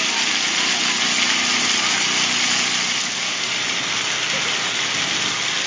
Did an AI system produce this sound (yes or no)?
no